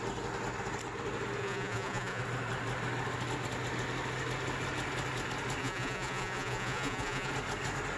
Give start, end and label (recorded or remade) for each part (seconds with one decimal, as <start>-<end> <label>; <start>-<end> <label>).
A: 0.0-1.4 recorded; 1.4-2.2 remade; 2.2-5.6 recorded; 5.6-7.3 remade; 7.3-8.0 recorded